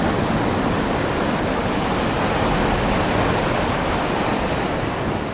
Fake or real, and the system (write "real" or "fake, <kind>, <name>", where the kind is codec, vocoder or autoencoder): real